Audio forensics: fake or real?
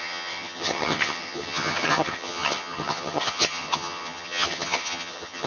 fake